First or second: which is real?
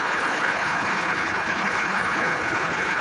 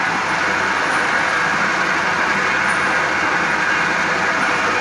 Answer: second